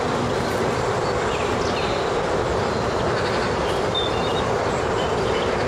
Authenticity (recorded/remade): remade